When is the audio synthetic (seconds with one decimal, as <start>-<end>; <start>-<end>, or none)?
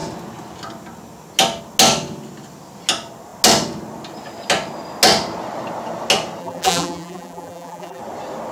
6.4-8.0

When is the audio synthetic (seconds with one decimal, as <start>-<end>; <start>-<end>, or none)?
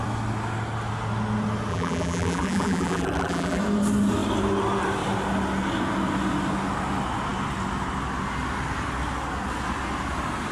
1.7-3.6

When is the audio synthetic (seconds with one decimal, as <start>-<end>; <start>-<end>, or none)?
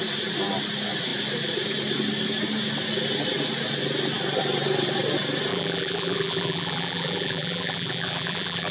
5.5-8.7